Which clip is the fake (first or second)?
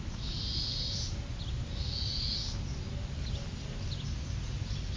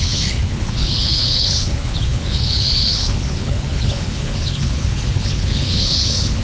second